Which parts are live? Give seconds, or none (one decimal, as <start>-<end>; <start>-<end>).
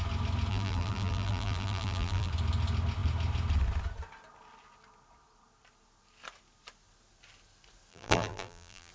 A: 0.0-0.5; 2.3-7.9